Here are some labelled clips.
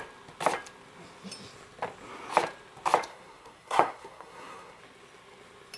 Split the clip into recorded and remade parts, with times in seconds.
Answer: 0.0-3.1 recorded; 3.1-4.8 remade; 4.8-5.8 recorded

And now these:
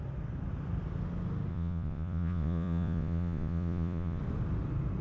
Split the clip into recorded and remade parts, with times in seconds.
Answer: 0.0-1.5 recorded; 1.5-4.2 remade; 4.2-5.0 recorded

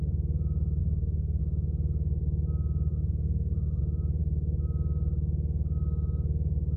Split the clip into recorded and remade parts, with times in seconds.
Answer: 0.0-0.8 recorded; 0.8-1.4 remade; 1.4-2.9 recorded; 2.9-3.8 remade; 3.8-6.8 recorded

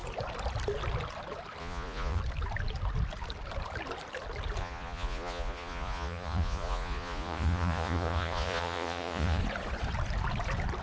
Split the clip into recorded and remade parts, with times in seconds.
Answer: 0.0-1.6 recorded; 1.6-2.2 remade; 2.2-4.6 recorded; 4.6-9.4 remade; 9.4-10.8 recorded

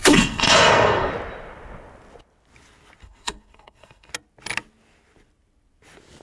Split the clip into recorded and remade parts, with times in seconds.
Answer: 0.0-1.1 remade; 1.1-3.0 recorded; 3.0-4.1 remade; 4.1-6.2 recorded